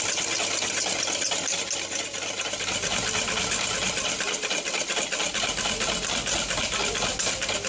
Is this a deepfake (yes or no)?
no